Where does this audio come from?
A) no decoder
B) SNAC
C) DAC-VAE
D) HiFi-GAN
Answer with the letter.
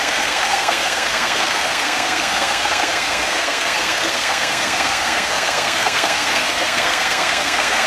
B